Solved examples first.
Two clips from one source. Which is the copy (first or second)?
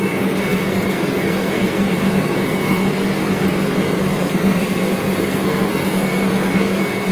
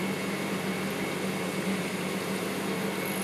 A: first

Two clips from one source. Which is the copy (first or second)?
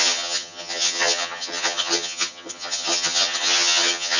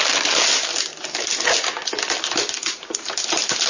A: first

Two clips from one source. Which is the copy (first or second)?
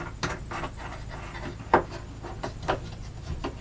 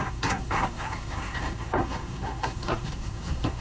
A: second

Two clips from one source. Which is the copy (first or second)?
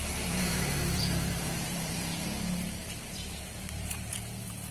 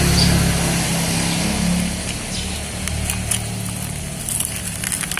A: first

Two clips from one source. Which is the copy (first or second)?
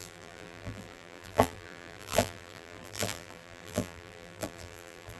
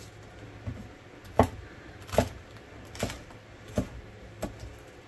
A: first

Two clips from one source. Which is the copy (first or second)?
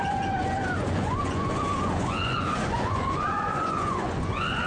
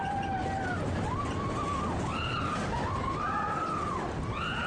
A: first